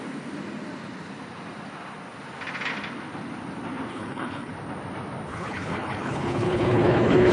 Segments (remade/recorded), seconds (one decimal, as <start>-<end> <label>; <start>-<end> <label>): 0.0-3.9 recorded; 3.9-4.5 remade; 4.5-5.3 recorded; 5.3-7.3 remade